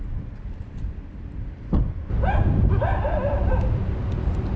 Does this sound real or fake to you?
real